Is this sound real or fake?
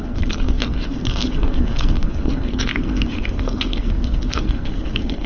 fake